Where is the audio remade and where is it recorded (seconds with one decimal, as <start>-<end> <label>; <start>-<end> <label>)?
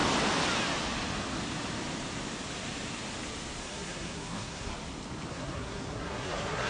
0.0-3.6 recorded; 3.6-4.7 remade; 4.7-5.3 recorded; 5.3-6.7 remade